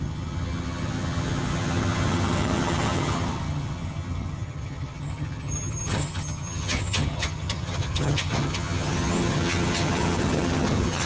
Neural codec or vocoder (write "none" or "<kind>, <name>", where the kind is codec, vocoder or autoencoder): vocoder, HiFi-GAN